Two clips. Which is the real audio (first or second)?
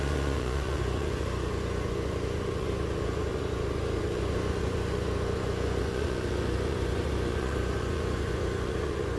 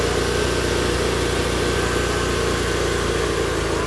second